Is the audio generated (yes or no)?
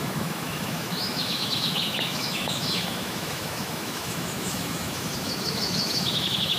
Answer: yes